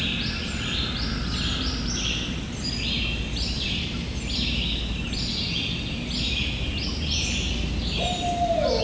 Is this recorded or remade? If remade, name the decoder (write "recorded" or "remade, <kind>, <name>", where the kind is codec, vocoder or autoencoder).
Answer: recorded